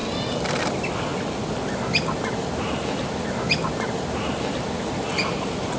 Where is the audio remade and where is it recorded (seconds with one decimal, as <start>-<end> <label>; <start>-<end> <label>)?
0.0-5.8 recorded